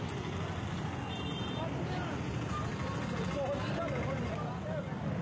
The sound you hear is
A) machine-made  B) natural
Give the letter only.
B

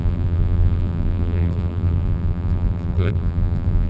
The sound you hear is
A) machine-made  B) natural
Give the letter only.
A